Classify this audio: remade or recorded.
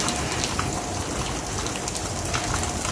recorded